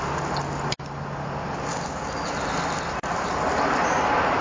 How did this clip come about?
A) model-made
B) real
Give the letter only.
B